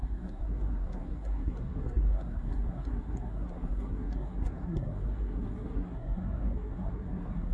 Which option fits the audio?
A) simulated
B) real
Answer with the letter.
A